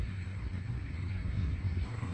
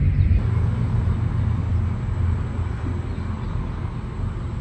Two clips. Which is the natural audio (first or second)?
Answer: second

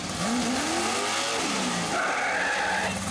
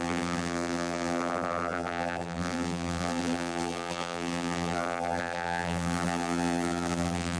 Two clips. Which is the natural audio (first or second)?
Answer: first